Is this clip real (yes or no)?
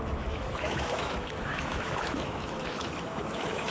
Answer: no